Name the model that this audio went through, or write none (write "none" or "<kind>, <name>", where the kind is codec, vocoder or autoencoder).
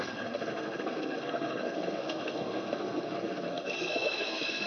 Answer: codec, SNAC